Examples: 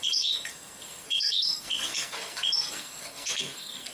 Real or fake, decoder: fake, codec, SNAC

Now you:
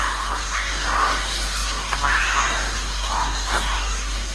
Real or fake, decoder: fake, codec, SNAC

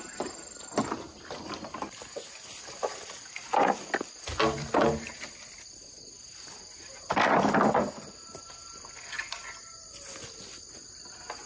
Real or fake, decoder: real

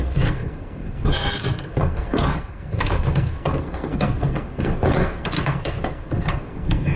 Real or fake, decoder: fake, codec, SNAC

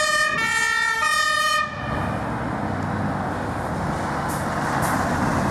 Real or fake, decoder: real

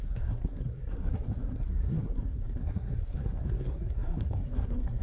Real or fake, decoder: fake, codec, SNAC